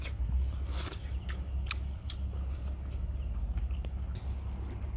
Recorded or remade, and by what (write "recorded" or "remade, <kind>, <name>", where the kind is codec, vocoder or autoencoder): recorded